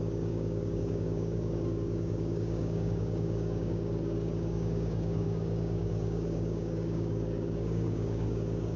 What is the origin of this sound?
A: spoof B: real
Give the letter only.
A